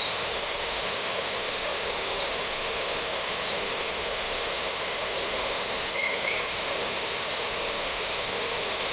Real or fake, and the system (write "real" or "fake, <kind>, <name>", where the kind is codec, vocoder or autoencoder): fake, autoencoder, DAC-VAE